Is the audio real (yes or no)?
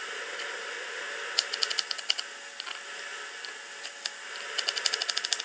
yes